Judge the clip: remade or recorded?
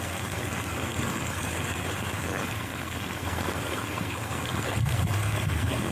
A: remade